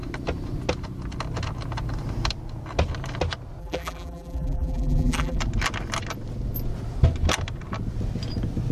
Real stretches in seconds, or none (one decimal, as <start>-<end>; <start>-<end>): 0.0-3.6; 5.4-8.7